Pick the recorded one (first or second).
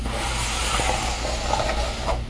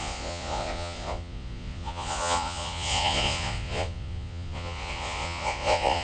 first